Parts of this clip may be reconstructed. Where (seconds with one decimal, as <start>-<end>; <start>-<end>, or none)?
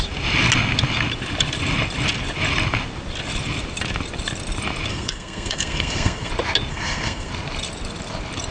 4.9-6.3; 6.7-7.3